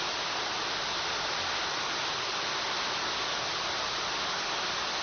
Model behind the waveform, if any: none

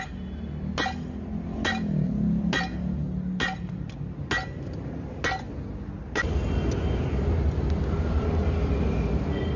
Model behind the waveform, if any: none